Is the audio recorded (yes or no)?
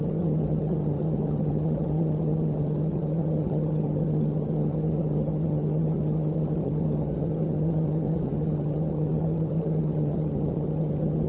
no